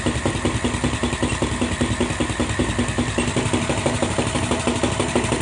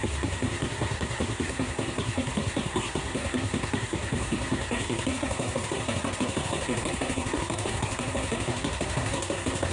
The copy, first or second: second